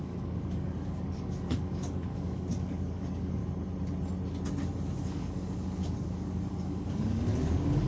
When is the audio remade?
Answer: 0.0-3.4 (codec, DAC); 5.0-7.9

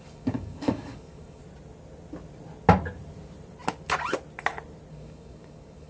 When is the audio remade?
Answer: 0.0-1.4 (codec, DAC); 4.9-5.9